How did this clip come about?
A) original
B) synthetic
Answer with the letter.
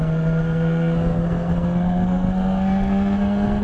B